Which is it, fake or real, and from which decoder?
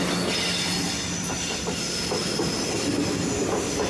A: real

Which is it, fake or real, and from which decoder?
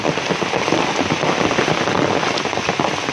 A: real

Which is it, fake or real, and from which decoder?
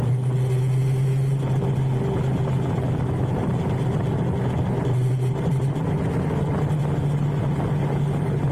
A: real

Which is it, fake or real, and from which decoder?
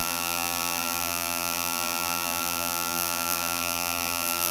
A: fake, vocoder, BigVGAN v2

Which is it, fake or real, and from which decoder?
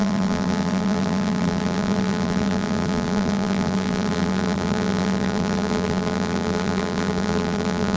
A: fake, vocoder, BigVGAN v2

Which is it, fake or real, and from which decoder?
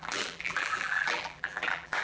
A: fake, vocoder, BigVGAN v2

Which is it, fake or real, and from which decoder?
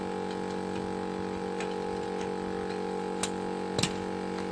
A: real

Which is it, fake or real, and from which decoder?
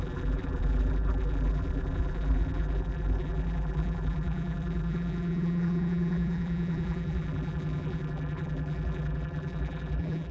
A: fake, vocoder, BigVGAN v2